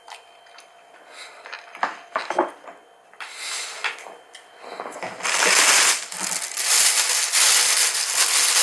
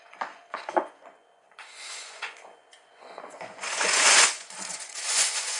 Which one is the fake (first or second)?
second